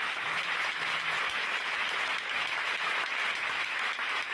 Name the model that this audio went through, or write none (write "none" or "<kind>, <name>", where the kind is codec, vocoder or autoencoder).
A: autoencoder, DAC-VAE